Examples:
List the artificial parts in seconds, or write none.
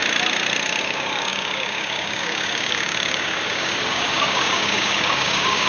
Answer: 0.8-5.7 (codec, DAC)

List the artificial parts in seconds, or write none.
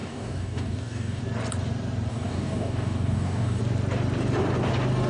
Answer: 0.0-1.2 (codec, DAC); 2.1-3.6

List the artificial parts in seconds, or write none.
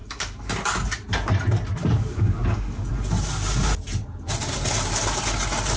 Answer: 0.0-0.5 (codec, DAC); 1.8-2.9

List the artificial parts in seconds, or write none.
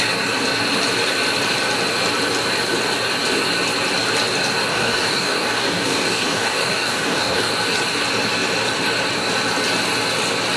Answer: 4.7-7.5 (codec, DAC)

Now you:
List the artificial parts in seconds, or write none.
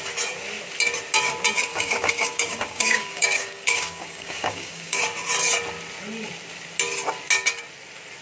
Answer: 1.7-5.0 (codec, DAC)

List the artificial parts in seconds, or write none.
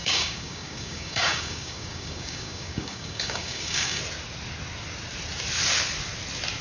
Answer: 0.0-4.0 (codec, DAC)